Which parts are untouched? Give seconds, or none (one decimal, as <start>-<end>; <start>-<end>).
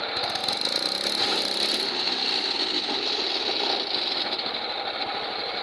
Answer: 0.0-5.6